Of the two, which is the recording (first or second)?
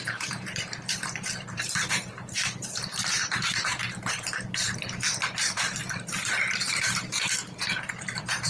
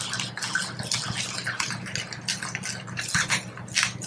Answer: second